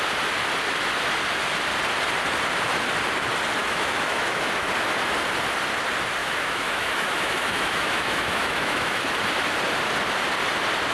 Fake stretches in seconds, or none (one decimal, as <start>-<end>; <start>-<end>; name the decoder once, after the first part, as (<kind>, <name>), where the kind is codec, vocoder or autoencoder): 3.6-4.7 (autoencoder, DAC-VAE); 6.2-9.0